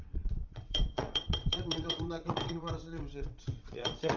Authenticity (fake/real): fake